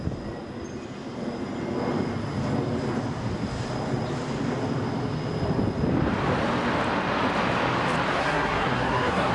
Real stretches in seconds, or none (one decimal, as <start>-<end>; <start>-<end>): 0.0-8.2